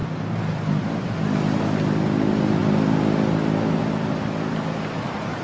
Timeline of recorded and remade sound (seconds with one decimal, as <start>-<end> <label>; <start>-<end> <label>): 0.0-5.4 recorded